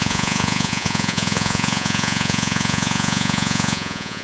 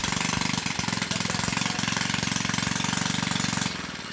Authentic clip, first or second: second